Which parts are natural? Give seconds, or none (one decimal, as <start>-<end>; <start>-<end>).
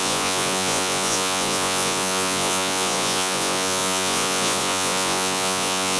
none